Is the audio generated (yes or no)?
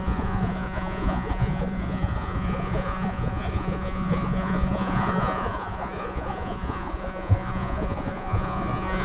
yes